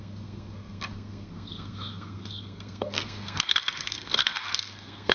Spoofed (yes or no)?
yes